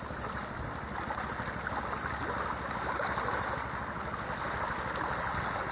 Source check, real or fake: real